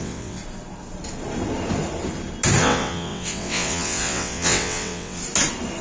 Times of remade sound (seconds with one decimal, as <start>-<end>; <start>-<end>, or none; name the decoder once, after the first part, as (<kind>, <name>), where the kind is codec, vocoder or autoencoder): 0.0-0.4 (vocoder, WaveNeXt); 2.6-5.2